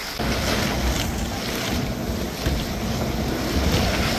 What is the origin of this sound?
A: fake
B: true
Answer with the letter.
B